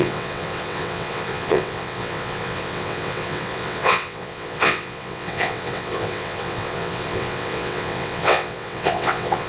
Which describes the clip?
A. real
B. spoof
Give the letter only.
B